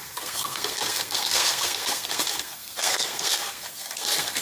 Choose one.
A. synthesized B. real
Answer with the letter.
A